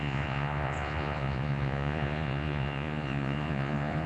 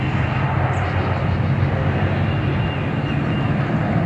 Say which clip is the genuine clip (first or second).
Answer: second